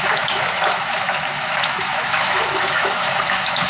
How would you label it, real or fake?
fake